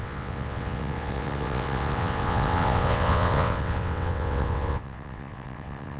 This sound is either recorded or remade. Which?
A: remade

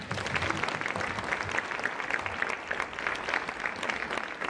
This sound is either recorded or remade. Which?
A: recorded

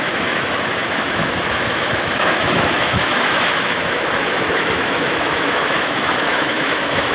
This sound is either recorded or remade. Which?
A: remade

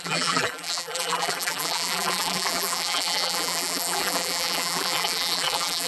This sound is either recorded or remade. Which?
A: remade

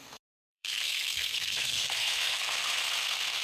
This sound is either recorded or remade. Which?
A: remade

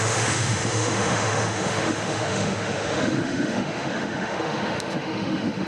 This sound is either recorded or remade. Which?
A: remade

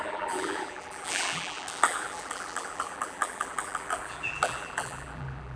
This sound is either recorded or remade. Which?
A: remade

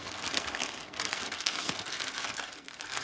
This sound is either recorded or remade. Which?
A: remade